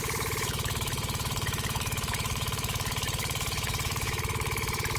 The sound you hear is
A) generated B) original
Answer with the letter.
A